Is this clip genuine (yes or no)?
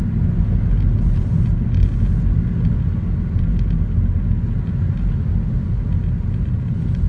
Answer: yes